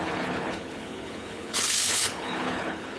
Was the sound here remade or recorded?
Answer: remade